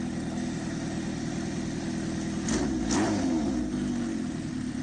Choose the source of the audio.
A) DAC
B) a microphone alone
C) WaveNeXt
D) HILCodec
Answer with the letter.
B